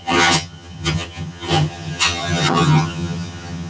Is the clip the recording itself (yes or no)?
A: no